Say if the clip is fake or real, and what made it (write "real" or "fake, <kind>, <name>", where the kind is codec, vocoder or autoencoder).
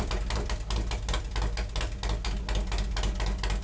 real